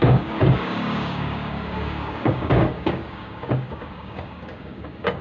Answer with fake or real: fake